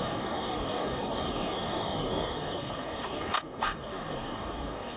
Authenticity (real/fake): fake